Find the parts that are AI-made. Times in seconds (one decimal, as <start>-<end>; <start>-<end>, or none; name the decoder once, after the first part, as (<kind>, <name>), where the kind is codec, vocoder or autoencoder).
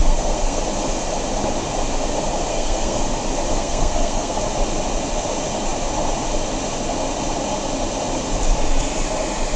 0.0-0.6 (codec, SNAC); 2.5-3.0; 3.5-4.4